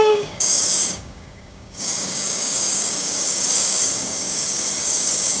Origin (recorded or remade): remade